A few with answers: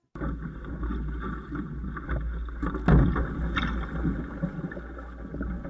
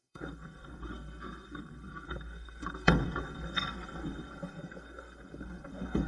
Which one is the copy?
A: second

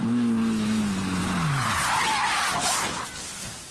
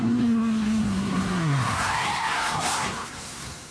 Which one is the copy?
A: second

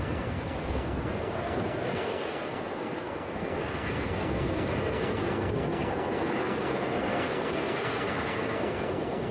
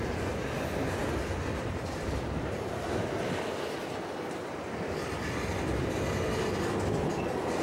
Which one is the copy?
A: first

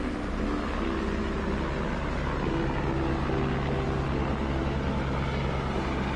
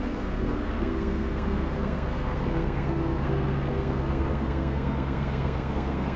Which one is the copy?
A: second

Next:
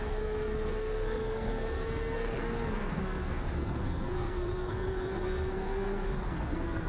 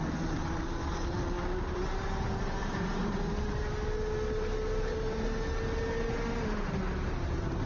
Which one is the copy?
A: first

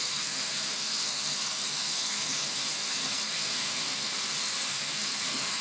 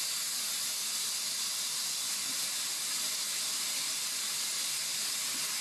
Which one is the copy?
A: first